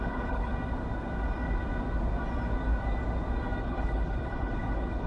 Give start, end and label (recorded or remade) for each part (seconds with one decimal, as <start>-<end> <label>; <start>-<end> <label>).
0.0-0.5 remade; 0.5-3.6 recorded; 3.6-5.1 remade